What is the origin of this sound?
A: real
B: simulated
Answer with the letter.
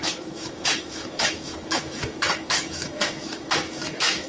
B